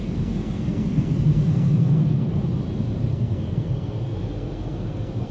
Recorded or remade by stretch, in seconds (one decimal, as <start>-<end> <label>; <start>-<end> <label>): 0.0-2.4 remade; 2.4-3.1 recorded; 3.1-5.3 remade